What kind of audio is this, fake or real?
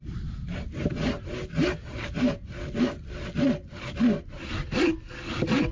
real